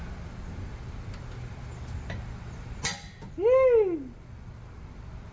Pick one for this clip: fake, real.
real